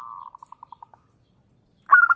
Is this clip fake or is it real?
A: real